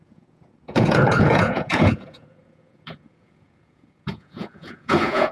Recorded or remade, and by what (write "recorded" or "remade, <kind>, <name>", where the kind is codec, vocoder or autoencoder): remade, vocoder, Vocos